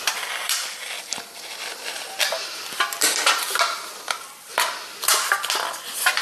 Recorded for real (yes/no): yes